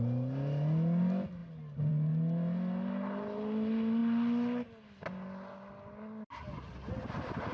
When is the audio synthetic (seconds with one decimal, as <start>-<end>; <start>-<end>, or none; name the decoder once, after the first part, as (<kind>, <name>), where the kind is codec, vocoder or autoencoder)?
none

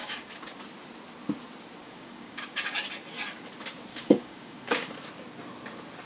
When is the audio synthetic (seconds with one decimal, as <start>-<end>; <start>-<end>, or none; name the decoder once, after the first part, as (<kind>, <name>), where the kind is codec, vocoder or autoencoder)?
0.0-0.6 (codec, DAC); 1.8-2.6; 3.9-5.0

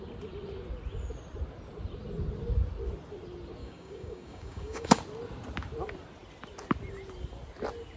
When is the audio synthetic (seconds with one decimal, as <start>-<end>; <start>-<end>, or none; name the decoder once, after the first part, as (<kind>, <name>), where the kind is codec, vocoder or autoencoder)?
3.6-5.0 (codec, DAC)

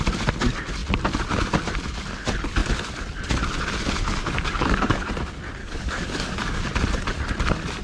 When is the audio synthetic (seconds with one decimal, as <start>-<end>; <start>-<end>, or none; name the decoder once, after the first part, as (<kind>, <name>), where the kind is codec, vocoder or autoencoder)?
4.2-5.1 (codec, DAC); 5.6-6.6